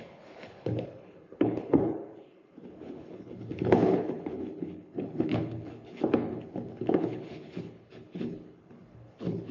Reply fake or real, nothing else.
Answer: fake